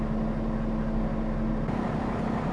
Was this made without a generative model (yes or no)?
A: yes